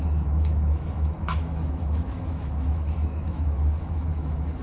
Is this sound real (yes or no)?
no